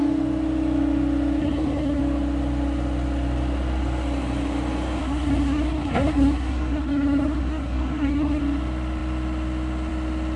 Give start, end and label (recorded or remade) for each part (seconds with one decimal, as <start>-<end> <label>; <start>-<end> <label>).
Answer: 0.0-1.4 recorded; 1.4-2.0 remade; 2.0-5.0 recorded; 5.0-8.4 remade; 8.4-10.4 recorded